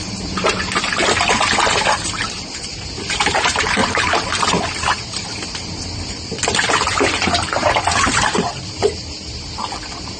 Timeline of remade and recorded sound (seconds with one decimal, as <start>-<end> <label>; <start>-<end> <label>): 0.0-10.2 recorded